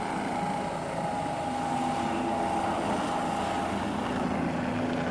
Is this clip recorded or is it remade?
recorded